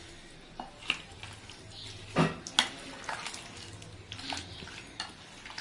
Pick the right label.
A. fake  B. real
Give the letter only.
B